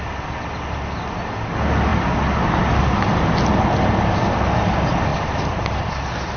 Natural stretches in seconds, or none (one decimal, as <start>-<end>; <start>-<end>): 0.0-5.1; 5.9-6.4